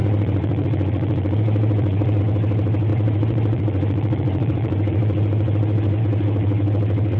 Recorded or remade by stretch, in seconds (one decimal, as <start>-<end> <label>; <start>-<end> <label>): 0.0-2.2 remade; 2.2-2.9 recorded; 2.9-6.0 remade; 6.0-7.2 recorded